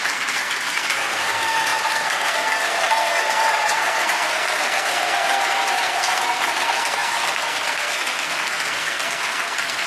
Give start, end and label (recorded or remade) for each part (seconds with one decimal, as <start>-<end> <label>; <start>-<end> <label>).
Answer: 0.0-9.9 remade